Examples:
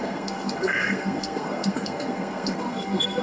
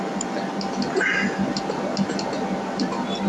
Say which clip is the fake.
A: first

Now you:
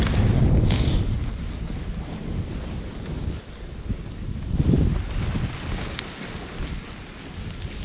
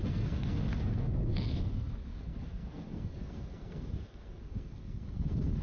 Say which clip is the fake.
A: second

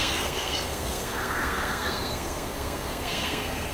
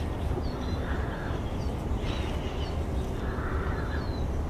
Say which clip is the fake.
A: first